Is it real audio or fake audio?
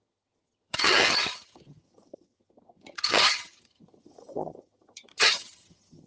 fake